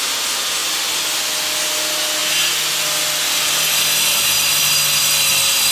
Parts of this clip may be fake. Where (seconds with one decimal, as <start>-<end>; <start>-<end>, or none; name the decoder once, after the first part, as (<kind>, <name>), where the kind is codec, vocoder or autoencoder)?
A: none